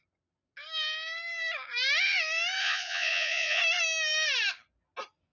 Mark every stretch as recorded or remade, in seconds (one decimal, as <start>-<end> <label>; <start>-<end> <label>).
0.0-2.6 recorded; 2.6-3.6 remade; 3.6-5.3 recorded